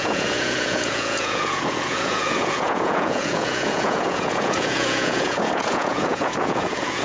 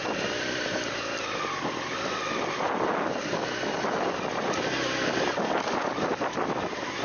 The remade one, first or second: first